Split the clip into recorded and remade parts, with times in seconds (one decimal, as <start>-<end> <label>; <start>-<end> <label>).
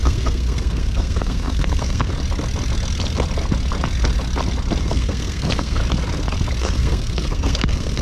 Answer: 0.0-2.1 remade; 2.1-4.8 recorded; 4.8-5.8 remade; 5.8-6.6 recorded; 6.6-8.0 remade